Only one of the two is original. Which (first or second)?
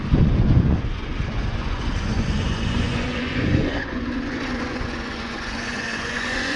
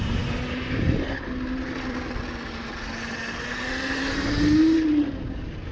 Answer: second